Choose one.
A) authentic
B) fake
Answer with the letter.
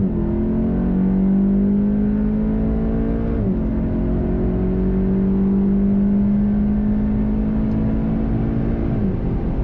A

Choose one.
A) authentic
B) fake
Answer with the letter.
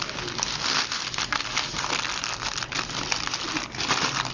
A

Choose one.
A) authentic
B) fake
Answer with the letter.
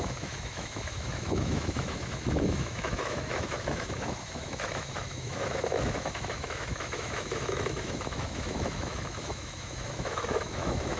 B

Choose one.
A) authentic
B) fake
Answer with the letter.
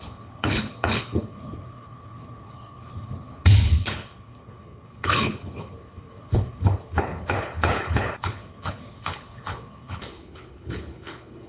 B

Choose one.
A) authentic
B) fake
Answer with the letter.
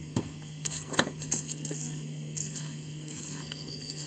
B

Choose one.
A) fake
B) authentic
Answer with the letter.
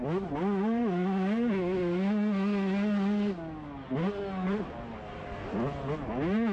B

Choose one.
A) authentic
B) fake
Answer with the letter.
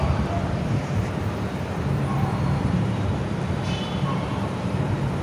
B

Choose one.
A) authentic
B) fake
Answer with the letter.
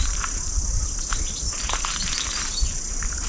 B